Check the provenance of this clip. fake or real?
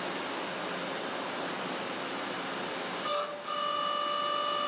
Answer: real